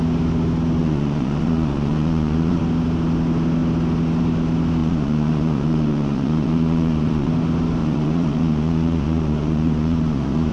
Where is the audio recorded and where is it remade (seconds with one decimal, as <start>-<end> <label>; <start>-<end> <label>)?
0.0-0.8 recorded; 0.8-2.6 remade; 2.6-4.8 recorded; 4.8-7.3 remade; 7.3-7.8 recorded; 7.8-10.5 remade

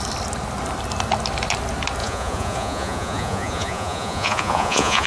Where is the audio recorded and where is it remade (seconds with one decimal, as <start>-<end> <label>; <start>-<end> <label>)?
0.0-2.0 recorded; 2.0-5.1 remade

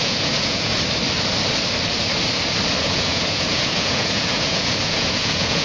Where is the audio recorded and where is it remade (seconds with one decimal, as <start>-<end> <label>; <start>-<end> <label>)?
0.0-0.7 remade; 0.7-2.8 recorded; 2.8-5.6 remade